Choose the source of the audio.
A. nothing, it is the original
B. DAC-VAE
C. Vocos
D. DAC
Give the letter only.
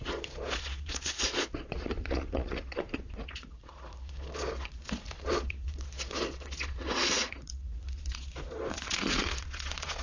C